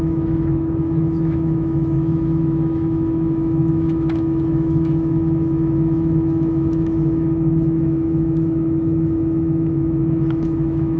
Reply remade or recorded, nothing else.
remade